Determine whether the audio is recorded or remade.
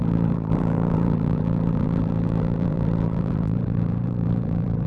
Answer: remade